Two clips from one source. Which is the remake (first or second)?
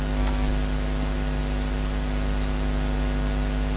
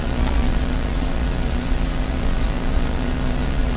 second